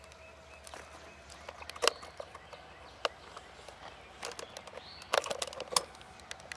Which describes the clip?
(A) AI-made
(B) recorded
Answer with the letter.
B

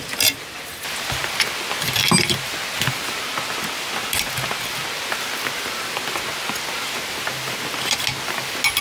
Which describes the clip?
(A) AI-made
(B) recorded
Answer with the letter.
B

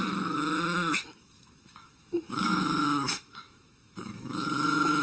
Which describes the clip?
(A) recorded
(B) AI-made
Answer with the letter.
B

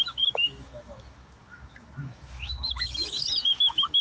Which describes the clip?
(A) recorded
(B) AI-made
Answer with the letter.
B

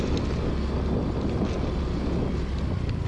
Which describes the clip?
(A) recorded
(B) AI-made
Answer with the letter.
A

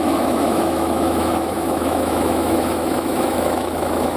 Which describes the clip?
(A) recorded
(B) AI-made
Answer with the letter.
B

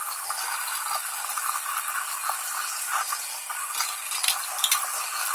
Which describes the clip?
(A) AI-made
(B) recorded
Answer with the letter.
B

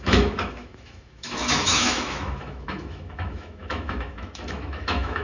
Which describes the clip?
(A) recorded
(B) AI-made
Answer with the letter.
B